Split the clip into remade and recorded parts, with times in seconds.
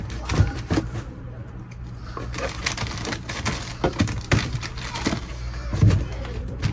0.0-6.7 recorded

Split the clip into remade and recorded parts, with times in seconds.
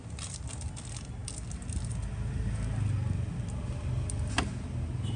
0.0-5.2 recorded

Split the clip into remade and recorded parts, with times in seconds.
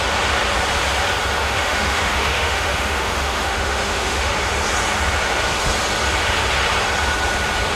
0.0-1.4 recorded; 1.4-4.3 remade; 4.3-7.8 recorded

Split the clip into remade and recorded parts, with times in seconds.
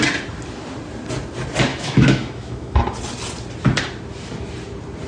0.0-1.7 recorded; 1.7-2.8 remade; 2.8-5.1 recorded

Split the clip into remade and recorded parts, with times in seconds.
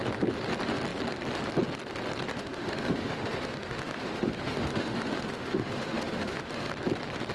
0.0-2.3 recorded; 2.3-6.7 remade; 6.7-7.3 recorded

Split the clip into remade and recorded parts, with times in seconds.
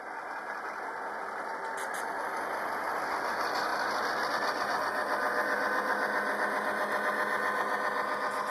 0.0-8.5 recorded